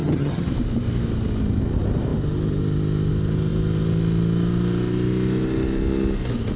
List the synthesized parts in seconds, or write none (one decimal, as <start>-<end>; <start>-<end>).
0.0-0.5